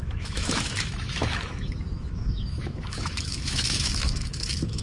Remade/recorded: remade